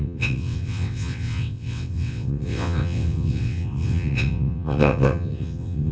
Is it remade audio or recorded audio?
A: remade